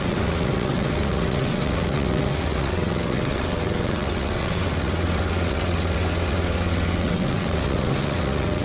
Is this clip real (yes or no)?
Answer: no